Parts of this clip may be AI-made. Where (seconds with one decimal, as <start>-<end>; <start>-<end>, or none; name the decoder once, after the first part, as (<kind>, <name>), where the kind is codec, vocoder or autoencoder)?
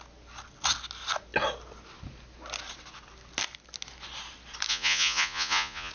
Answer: 4.7-5.9 (vocoder, Vocos)